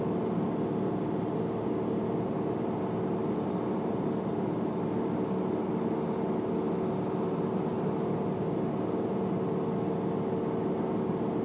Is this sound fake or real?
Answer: real